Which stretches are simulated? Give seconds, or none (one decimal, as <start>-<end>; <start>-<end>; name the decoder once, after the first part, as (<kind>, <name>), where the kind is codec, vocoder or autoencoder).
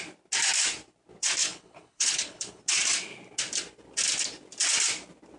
1.4-2.6 (codec, HILCodec)